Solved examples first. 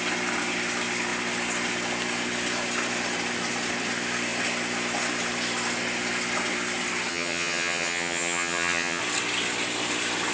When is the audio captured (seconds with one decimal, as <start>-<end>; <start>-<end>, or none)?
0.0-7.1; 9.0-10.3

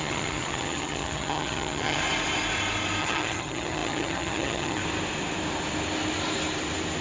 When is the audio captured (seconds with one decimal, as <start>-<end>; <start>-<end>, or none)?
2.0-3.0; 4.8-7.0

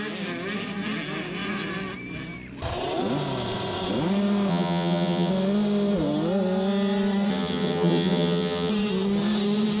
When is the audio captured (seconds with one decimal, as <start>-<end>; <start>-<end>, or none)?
0.0-4.5; 5.3-7.3; 8.7-9.8

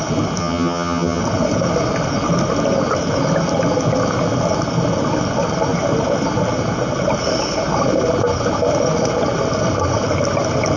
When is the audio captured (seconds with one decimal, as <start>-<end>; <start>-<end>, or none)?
0.0-0.4; 1.2-10.8

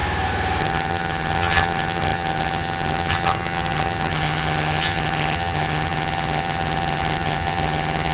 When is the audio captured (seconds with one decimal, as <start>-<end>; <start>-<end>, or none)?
0.0-0.6